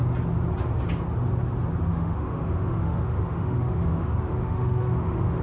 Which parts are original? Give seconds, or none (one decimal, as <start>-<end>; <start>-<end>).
0.0-1.9